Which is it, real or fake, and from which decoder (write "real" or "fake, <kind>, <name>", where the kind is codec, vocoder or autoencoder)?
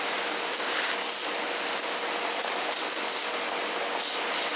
real